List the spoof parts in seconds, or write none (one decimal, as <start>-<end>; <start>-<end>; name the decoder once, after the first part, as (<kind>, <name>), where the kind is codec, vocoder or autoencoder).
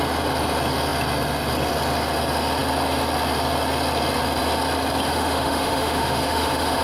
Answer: 5.1-6.8 (autoencoder, DAC-VAE)